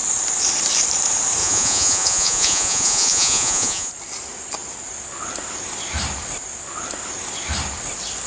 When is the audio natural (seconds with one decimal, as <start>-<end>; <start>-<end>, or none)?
0.0-1.4; 3.9-8.3